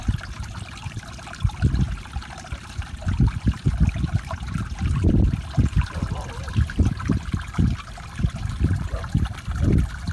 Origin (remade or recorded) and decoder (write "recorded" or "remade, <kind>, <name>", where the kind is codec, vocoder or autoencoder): recorded